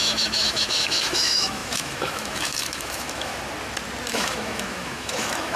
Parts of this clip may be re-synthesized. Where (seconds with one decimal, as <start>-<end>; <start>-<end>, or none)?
0.0-3.3; 4.1-5.6